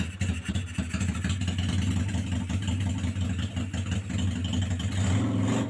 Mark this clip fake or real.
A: real